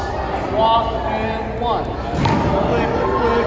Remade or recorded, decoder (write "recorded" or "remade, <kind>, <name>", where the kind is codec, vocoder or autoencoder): recorded